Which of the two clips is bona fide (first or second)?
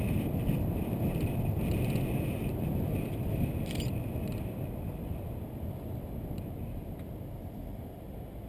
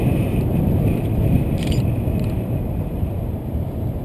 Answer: first